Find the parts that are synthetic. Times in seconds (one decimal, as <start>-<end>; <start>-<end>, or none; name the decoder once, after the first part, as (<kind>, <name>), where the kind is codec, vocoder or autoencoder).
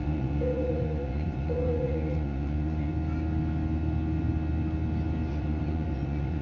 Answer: 0.0-2.9 (vocoder, Vocos); 5.3-6.4